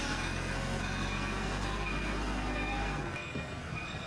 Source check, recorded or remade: remade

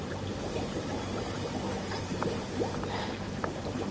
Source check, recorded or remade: recorded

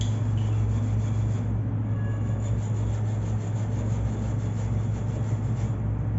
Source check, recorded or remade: recorded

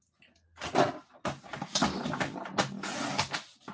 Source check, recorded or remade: recorded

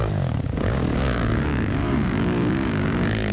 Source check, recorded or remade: remade